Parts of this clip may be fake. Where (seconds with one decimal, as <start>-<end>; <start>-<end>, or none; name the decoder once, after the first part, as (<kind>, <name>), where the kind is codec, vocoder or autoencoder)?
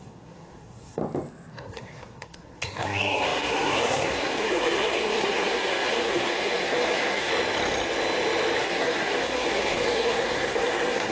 0.0-1.0 (codec, SNAC); 1.5-7.3; 8.6-11.1